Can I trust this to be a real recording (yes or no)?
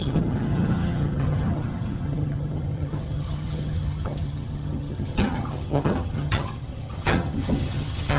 no